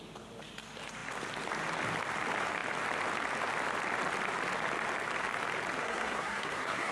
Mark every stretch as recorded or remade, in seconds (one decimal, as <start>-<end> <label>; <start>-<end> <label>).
0.0-5.8 recorded; 5.8-6.9 remade